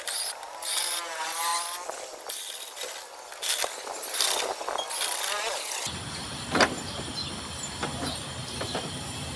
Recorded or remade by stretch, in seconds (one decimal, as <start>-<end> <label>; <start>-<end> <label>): 0.0-1.5 remade; 1.5-6.1 recorded; 6.1-7.2 remade; 7.2-8.0 recorded; 8.0-9.4 remade